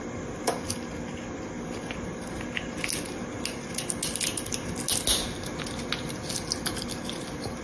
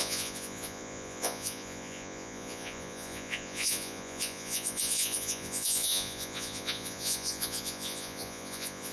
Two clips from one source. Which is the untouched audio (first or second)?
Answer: first